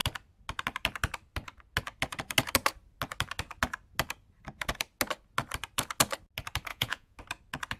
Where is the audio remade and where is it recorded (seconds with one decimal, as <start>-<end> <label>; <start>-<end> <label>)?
0.0-6.7 recorded; 6.7-7.2 remade; 7.2-7.8 recorded